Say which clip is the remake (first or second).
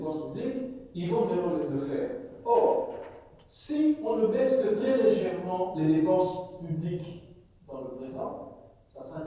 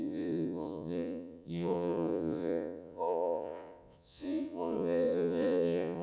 second